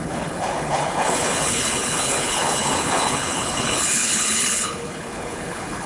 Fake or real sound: fake